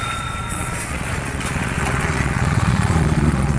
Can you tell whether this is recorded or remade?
remade